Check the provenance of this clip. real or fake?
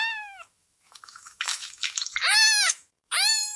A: fake